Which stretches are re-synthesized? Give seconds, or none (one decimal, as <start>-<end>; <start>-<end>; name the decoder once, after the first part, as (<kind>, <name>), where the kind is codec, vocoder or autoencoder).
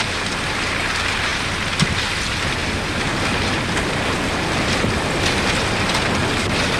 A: none